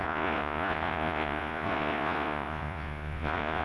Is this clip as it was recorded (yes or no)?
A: no